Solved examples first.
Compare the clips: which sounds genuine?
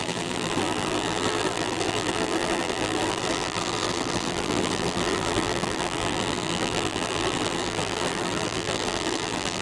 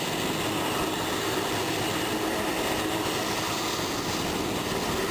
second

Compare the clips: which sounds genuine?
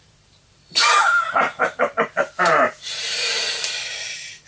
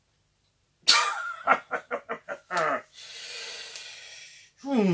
second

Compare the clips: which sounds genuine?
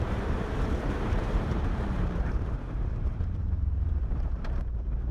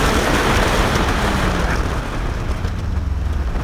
second